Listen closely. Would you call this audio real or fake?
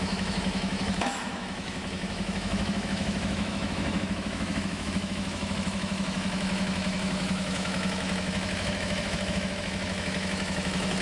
fake